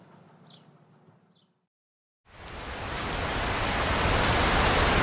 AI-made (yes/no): no